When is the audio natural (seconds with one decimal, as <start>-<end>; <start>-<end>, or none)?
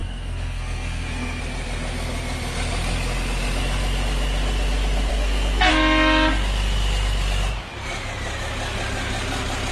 1.4-5.1; 5.7-9.7